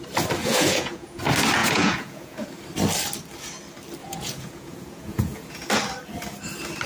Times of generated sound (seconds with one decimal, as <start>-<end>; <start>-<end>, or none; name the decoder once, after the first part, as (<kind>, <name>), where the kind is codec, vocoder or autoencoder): 0.4-1.2 (vocoder, Vocos); 1.6-2.5; 4.0-5.7